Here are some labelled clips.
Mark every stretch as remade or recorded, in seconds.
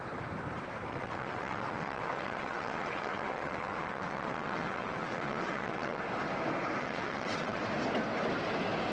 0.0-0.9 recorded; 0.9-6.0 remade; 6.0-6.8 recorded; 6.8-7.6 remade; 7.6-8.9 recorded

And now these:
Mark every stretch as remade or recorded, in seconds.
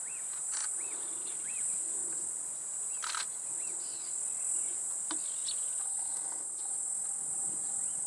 0.0-8.1 recorded